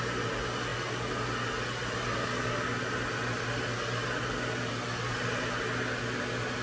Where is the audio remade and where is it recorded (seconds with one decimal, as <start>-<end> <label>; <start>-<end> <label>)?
0.0-6.6 recorded